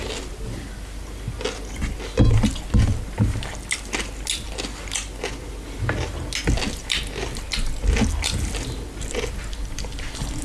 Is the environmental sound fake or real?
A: real